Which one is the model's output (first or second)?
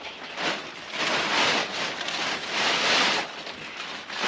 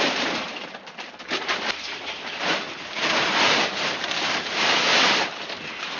second